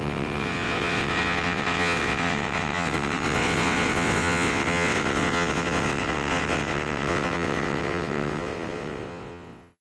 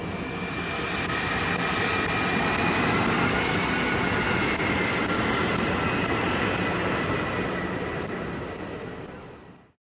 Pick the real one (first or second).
second